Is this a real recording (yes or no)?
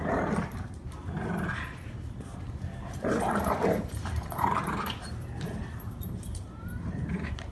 no